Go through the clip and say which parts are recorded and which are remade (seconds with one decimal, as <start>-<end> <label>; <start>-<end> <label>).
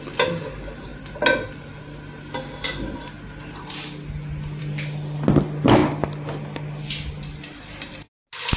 0.0-8.6 recorded